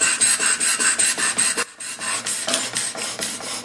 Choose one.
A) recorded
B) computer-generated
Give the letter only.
A